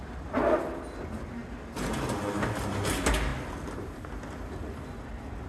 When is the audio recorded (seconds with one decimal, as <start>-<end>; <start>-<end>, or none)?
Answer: 0.0-5.5